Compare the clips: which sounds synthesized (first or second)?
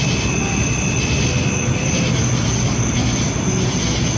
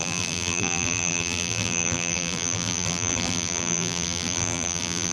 second